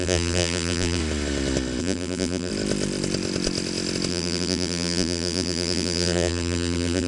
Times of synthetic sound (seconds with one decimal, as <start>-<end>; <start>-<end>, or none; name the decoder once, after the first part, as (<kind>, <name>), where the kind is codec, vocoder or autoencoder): 0.0-1.0 (vocoder, BigVGAN v2); 1.8-2.5; 4.1-7.1